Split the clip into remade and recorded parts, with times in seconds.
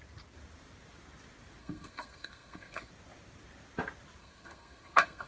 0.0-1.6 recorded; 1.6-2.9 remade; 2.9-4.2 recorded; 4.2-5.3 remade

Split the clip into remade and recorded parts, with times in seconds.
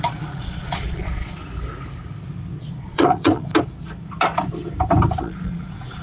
0.0-1.4 remade; 1.4-2.6 recorded; 2.6-3.5 remade; 3.5-5.2 recorded; 5.2-6.0 remade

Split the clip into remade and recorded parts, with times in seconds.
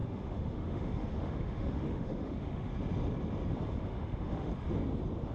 0.0-2.7 remade; 2.7-3.7 recorded; 3.7-4.5 remade; 4.5-5.3 recorded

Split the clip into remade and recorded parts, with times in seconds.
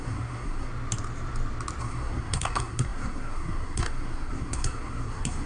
0.0-0.7 remade; 0.7-1.8 recorded; 1.8-5.5 remade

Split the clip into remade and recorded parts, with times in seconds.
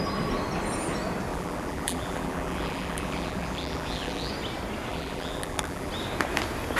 0.0-1.3 recorded; 1.3-4.3 remade; 4.3-4.9 recorded; 4.9-5.9 remade; 5.9-6.8 recorded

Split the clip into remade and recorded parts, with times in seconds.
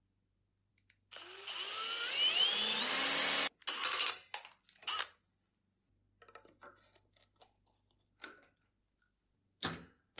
0.0-10.2 recorded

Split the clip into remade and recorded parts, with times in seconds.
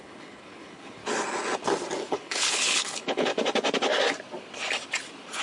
0.0-1.0 remade; 1.0-2.1 recorded; 2.1-3.3 remade; 3.3-5.4 recorded